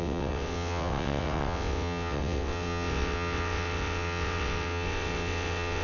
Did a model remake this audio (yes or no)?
yes